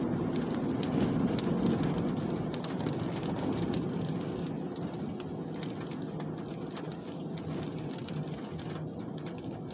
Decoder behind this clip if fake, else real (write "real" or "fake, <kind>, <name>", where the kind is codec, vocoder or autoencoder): real